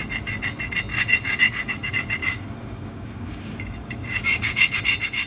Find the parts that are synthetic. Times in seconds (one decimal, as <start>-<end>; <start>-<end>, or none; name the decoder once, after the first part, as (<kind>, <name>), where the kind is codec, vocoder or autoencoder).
0.9-1.9 (codec, DAC); 2.3-4.8